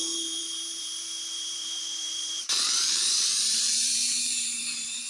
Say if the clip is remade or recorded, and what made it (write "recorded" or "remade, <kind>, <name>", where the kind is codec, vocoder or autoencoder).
remade, vocoder, BigVGAN v2